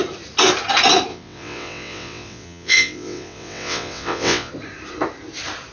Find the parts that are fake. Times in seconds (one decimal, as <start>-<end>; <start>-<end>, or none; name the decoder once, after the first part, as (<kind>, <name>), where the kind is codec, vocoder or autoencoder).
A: 1.1-4.5 (vocoder, WaveNeXt)